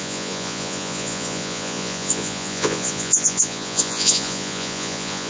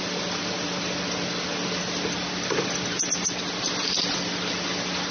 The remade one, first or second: first